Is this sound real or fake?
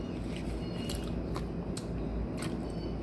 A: real